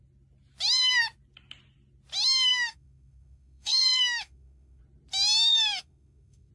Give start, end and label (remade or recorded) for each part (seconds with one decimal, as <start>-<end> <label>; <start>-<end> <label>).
0.0-2.5 recorded; 2.5-4.8 remade; 4.8-5.5 recorded; 5.5-6.5 remade